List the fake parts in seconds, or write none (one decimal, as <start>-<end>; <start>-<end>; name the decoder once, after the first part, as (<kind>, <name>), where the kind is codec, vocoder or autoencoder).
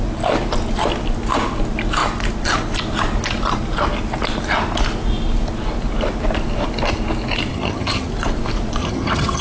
7.5-8.1 (vocoder, HiFi-GAN); 8.8-9.4